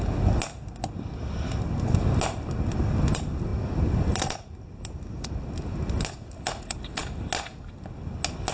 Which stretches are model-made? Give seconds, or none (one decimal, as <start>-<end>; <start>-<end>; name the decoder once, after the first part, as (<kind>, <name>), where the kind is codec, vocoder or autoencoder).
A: none